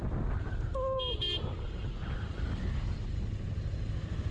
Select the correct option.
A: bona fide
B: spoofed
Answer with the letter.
A